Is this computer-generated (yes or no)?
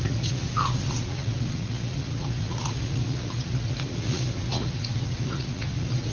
yes